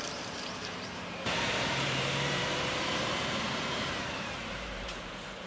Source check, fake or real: fake